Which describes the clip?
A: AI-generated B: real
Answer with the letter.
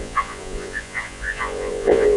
A